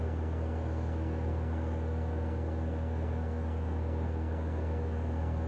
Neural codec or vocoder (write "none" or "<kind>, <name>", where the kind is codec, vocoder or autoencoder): codec, SNAC